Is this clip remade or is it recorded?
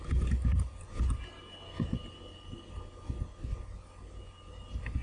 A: recorded